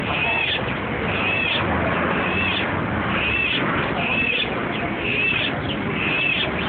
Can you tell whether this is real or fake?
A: real